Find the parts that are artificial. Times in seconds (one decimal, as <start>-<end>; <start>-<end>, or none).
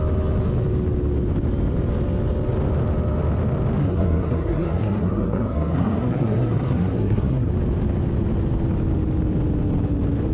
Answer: 3.8-7.5